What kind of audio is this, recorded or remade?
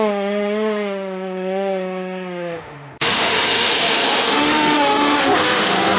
remade